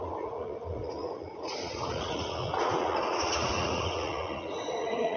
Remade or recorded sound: remade